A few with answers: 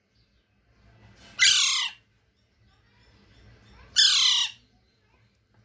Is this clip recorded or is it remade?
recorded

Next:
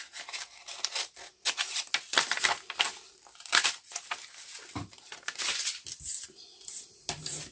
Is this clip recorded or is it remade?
recorded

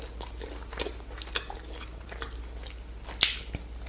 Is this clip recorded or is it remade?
recorded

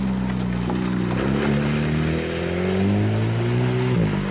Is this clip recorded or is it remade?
recorded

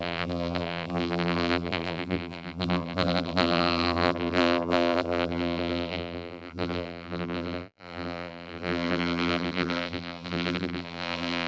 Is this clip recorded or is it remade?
remade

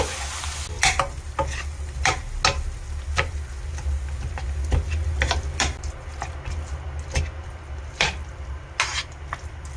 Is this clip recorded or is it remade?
recorded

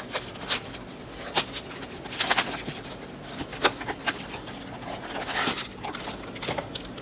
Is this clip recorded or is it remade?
recorded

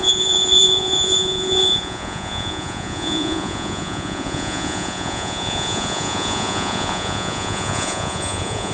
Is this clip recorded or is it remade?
remade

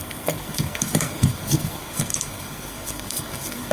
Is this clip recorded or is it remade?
remade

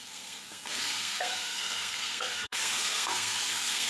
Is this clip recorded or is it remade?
remade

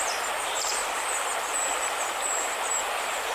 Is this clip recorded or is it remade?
recorded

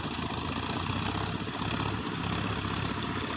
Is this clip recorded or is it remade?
recorded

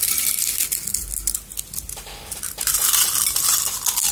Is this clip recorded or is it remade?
recorded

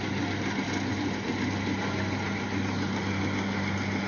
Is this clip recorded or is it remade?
recorded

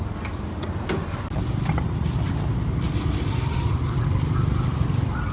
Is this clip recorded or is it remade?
recorded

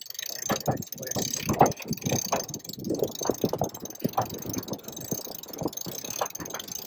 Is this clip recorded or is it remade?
recorded